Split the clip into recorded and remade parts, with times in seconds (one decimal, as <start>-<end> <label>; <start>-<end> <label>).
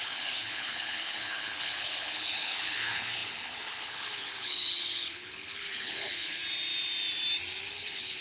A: 0.0-6.4 remade; 6.4-7.7 recorded; 7.7-8.2 remade